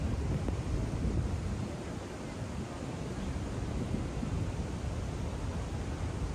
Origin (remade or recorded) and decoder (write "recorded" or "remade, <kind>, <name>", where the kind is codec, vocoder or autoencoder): recorded